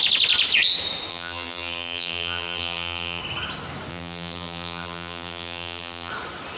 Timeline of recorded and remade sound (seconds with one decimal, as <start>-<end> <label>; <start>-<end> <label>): 0.0-1.1 recorded; 1.1-3.2 remade; 3.2-3.9 recorded; 3.9-6.1 remade; 6.1-6.6 recorded